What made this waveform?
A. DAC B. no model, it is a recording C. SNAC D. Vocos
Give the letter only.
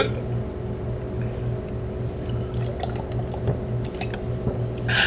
B